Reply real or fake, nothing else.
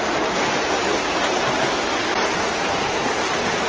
real